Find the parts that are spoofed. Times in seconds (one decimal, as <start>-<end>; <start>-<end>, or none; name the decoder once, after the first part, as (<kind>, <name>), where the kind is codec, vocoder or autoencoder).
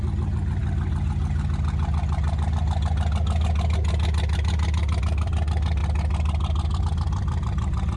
0.0-0.6 (vocoder, BigVGAN v2); 5.0-5.8; 6.8-8.0